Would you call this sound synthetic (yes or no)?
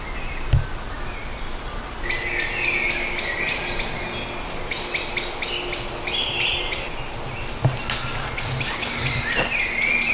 no